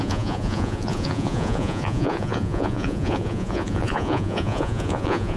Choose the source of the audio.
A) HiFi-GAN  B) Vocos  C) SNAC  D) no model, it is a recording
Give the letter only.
B